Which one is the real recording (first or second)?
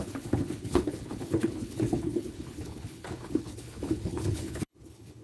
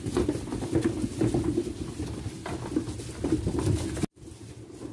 second